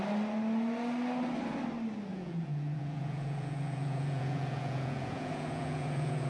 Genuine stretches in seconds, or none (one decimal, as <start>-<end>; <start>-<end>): 0.0-2.1